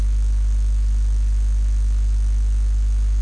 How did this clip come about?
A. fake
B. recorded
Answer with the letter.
B